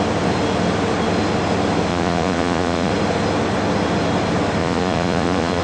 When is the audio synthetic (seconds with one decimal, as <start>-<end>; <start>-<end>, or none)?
1.9-2.9; 4.6-5.6